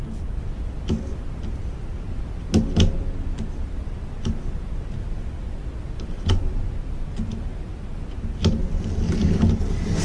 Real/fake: real